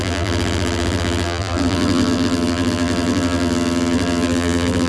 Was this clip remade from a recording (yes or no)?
yes